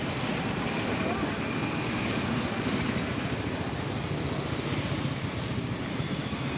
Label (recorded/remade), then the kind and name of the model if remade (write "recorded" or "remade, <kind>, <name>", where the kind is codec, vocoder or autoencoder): recorded